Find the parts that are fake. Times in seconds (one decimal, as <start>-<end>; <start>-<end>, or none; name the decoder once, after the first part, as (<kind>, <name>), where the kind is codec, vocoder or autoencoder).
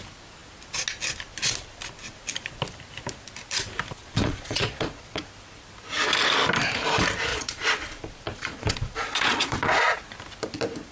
4.0-5.2 (vocoder, Vocos); 7.3-10.1